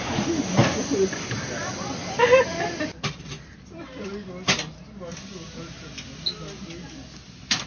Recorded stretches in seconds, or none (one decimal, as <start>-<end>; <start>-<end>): 0.0-0.6; 4.1-7.7